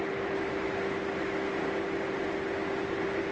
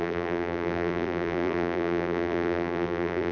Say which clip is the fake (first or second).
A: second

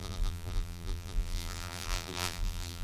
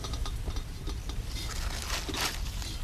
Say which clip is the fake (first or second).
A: first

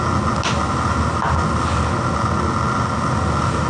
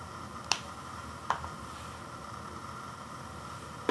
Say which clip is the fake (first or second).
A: second